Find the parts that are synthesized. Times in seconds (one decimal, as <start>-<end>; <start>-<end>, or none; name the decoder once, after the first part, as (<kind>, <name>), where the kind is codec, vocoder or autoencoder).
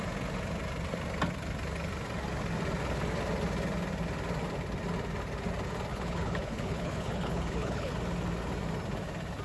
5.9-7.9 (codec, HILCodec)